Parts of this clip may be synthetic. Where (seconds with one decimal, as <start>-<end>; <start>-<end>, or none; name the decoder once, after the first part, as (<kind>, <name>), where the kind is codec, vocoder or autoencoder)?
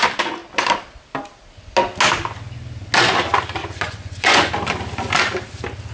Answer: 3.6-4.5 (vocoder, Vocos)